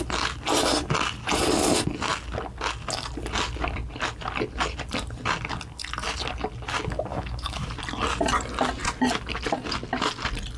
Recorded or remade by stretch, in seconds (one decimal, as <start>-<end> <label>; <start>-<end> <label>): 0.0-7.1 recorded; 7.1-7.7 remade; 7.7-10.6 recorded